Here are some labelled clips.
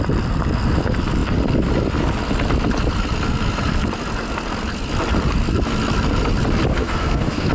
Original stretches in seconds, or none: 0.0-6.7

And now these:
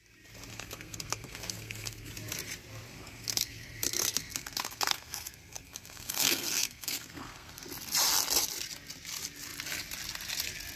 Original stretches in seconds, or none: 0.0-0.5; 2.1-2.9; 7.6-10.8

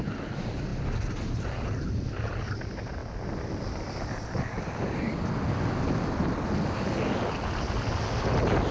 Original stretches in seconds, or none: 0.0-8.7

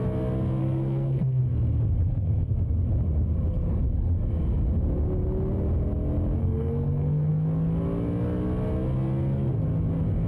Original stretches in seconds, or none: 0.0-0.6; 1.4-2.0; 2.7-6.4; 7.3-10.3